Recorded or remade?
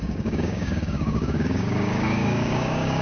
remade